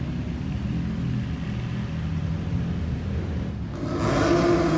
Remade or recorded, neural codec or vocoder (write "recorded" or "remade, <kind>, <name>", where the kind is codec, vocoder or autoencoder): recorded